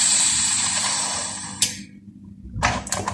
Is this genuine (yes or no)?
no